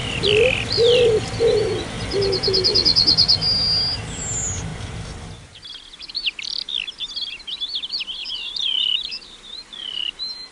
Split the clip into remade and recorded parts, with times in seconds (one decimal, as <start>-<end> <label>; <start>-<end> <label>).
0.0-1.6 remade; 1.6-8.2 recorded; 8.2-9.7 remade; 9.7-10.5 recorded